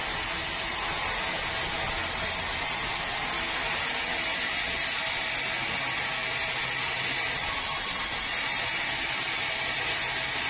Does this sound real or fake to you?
real